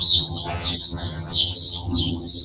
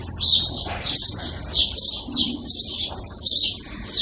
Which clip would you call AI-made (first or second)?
first